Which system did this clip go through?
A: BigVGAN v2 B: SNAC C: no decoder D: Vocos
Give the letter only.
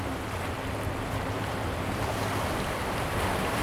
C